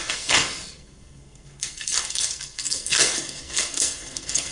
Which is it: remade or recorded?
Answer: remade